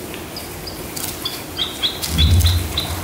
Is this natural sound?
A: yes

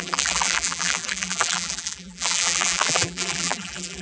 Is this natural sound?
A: no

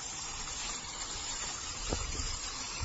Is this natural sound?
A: no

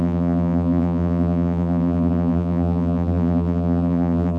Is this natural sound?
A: no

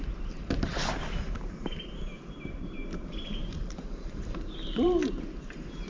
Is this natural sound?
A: no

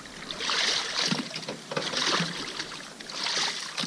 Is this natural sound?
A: yes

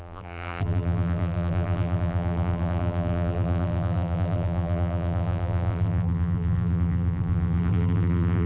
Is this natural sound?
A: no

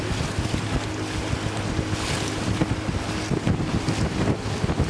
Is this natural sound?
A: yes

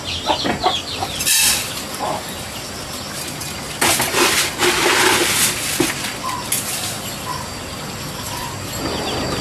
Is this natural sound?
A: yes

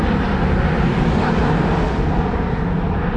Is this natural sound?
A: yes